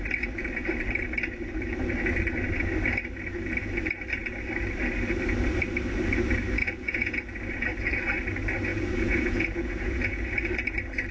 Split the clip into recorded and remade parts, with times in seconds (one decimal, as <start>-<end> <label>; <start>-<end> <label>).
0.0-6.6 recorded; 6.6-7.2 remade; 7.2-8.7 recorded; 8.7-10.2 remade; 10.2-11.1 recorded